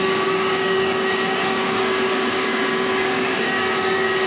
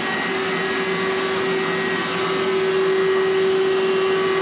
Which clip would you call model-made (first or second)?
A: first